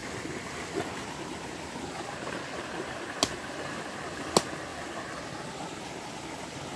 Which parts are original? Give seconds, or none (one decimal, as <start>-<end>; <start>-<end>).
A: 0.0-6.8